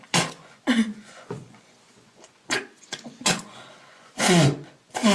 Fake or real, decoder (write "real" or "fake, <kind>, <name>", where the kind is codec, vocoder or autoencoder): fake, vocoder, Vocos